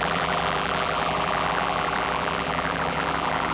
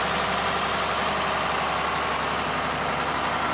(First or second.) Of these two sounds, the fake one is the first